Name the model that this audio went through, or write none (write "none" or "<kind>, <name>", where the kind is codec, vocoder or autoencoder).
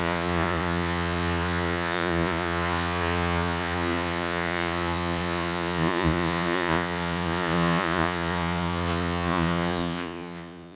vocoder, Vocos